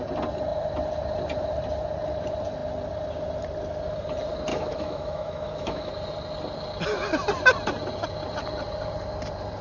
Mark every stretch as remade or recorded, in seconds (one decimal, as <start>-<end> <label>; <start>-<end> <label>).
0.0-4.5 recorded; 4.5-5.9 remade; 5.9-9.6 recorded